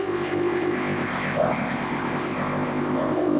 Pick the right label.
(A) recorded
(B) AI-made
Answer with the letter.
B